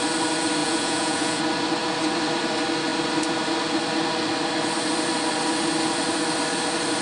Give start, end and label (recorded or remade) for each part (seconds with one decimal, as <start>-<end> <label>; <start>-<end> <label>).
0.0-0.6 recorded; 0.6-1.4 remade; 1.4-7.0 recorded